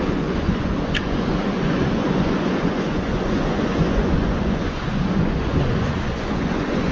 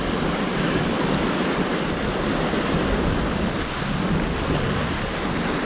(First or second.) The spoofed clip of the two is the first